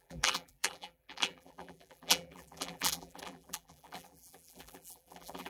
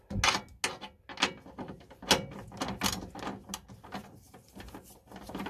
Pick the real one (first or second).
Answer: second